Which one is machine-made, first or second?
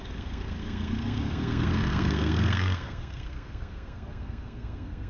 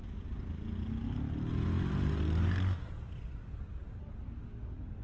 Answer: first